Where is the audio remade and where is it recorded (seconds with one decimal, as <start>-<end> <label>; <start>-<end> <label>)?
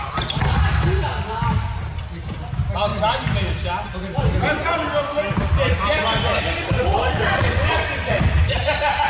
0.0-6.9 recorded; 6.9-8.2 remade; 8.2-9.1 recorded